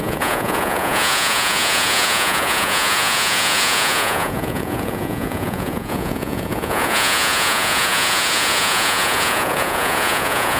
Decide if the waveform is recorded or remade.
remade